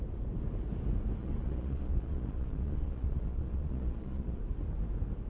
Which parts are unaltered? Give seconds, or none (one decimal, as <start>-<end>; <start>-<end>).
0.0-1.2; 4.4-5.3